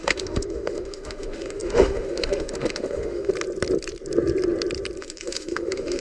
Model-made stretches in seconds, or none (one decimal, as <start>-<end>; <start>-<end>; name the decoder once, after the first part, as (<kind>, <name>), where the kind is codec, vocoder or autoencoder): 0.0-3.3 (autoencoder, DAC-VAE); 5.0-6.0